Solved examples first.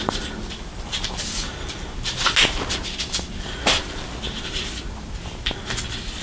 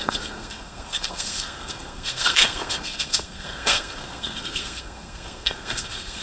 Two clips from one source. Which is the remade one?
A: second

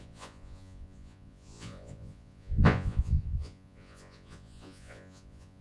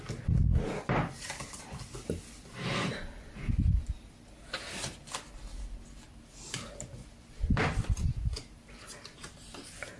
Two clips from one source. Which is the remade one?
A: first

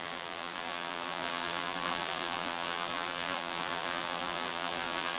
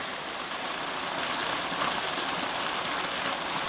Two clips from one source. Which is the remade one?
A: first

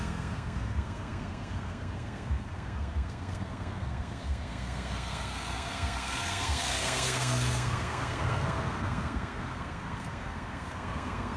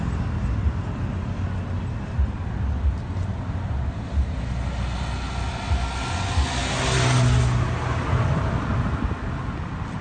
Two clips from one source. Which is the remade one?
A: first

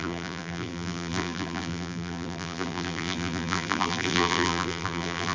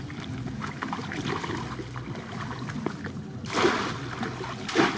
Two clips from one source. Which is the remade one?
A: first